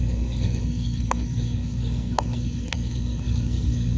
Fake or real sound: fake